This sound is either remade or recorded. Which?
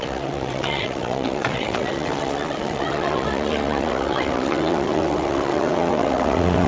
remade